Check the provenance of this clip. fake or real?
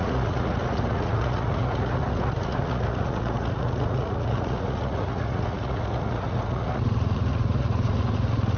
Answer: fake